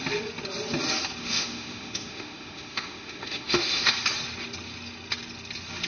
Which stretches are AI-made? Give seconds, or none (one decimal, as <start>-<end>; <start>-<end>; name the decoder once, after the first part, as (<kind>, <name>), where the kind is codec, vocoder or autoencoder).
1.2-3.9 (autoencoder, DAC-VAE)